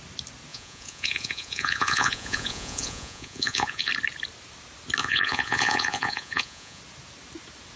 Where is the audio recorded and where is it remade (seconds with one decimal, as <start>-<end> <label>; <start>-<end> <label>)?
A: 0.0-0.5 recorded; 0.5-3.9 remade; 3.9-5.0 recorded; 5.0-6.8 remade; 6.8-7.8 recorded